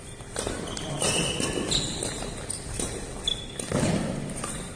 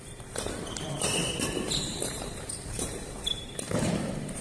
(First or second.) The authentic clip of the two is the first